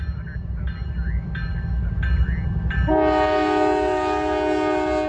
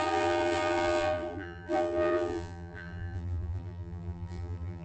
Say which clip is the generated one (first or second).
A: second